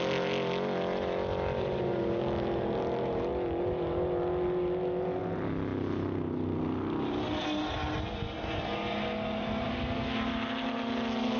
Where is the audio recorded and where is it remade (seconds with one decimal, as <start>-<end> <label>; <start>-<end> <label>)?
0.0-11.4 recorded